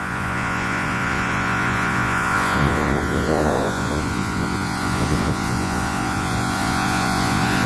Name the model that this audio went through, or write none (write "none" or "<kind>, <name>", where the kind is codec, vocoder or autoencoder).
vocoder, Vocos